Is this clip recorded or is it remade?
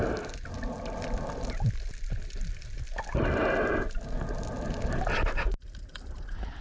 recorded